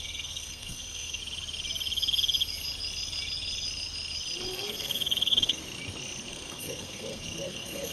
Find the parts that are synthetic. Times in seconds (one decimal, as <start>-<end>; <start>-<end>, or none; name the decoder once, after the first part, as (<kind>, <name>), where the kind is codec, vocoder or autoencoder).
0.0-1.2 (codec, SNAC); 4.4-5.6; 6.3-7.9